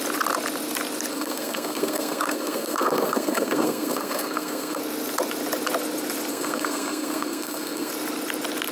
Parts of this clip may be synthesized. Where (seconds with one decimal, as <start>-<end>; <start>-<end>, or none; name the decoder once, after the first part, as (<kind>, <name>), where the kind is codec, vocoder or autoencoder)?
1.1-4.8 (codec, SNAC); 6.3-7.9